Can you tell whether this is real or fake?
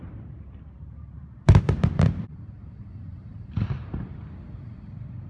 fake